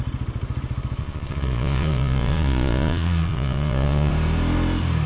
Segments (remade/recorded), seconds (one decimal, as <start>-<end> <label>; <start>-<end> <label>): 0.0-1.0 recorded; 1.0-4.1 remade; 4.1-5.1 recorded